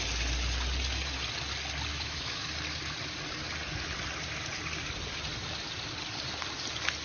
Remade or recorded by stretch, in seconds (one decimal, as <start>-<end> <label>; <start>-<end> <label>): 0.0-1.9 recorded; 1.9-2.5 remade; 2.5-7.0 recorded